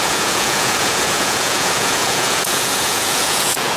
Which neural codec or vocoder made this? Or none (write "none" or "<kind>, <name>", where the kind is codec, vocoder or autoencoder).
vocoder, Vocos